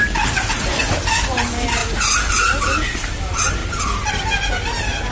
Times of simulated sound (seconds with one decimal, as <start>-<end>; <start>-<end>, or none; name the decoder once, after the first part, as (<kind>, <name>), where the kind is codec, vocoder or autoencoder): 0.0-0.8 (vocoder, BigVGAN v2); 3.6-4.1